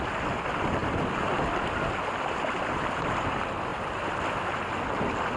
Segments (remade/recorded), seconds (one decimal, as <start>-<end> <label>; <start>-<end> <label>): 0.0-5.4 recorded